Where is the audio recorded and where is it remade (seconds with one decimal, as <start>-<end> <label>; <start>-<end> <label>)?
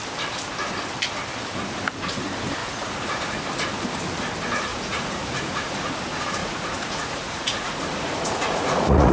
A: 0.0-2.6 recorded; 2.6-3.4 remade; 3.4-4.7 recorded; 4.7-5.9 remade; 5.9-6.4 recorded; 6.4-9.1 remade